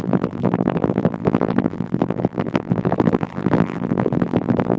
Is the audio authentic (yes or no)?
no